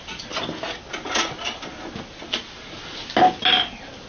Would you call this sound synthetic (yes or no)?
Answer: no